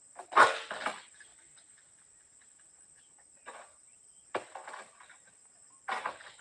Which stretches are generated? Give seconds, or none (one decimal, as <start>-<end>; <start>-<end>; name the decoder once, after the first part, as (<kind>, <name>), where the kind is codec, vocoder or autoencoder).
none